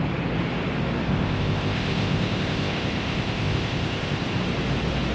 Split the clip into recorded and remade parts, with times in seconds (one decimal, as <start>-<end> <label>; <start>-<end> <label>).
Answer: 0.0-1.1 recorded; 1.1-4.2 remade; 4.2-5.1 recorded